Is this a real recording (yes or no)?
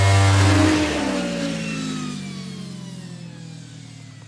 yes